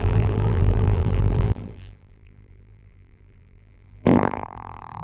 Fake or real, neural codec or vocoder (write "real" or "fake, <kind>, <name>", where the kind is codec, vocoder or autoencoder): fake, vocoder, BigVGAN v2